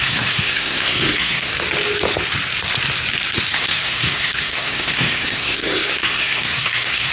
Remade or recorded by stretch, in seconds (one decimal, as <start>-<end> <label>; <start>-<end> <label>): 0.0-1.5 remade; 1.5-3.5 recorded; 3.5-7.1 remade